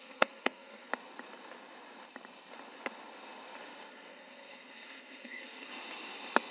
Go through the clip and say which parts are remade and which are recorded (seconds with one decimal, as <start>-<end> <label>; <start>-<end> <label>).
0.0-0.9 remade; 0.9-3.9 recorded; 3.9-5.7 remade; 5.7-6.5 recorded